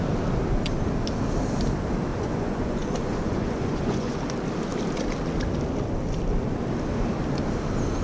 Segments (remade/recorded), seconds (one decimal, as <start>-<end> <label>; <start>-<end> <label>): 0.0-2.1 recorded; 2.1-4.2 remade; 4.2-8.0 recorded